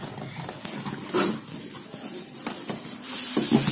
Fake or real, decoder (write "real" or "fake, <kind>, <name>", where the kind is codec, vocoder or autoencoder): real